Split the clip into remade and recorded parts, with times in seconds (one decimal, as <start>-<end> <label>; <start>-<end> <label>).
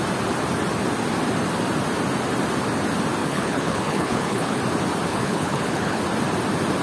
0.0-3.2 recorded; 3.2-4.6 remade; 4.6-5.1 recorded; 5.1-6.0 remade; 6.0-6.8 recorded